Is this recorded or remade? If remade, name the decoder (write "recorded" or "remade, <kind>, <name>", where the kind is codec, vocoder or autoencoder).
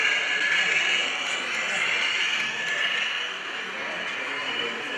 recorded